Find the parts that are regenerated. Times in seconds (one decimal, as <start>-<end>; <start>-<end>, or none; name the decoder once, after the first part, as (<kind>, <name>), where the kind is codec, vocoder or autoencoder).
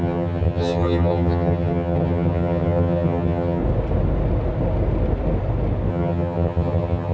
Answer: 0.0-3.6 (vocoder, HiFi-GAN); 5.9-7.1